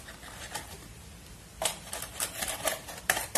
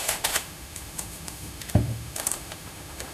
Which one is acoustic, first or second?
first